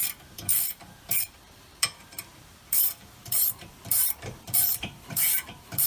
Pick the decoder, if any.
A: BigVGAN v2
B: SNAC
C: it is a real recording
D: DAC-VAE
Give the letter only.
A